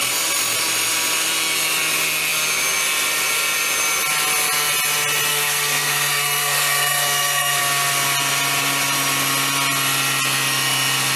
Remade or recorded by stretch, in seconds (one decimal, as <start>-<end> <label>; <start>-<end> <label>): 0.0-5.3 recorded; 5.3-7.6 remade; 7.6-11.2 recorded